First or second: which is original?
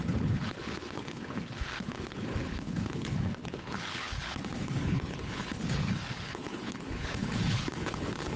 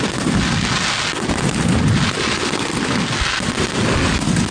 second